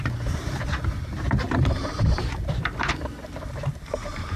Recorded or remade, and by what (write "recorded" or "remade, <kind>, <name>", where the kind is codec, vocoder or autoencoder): remade, vocoder, BigVGAN v2